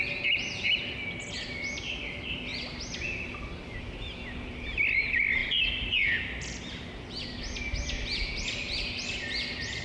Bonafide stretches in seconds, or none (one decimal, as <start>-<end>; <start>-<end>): 0.0-2.5; 3.5-5.4; 7.6-9.8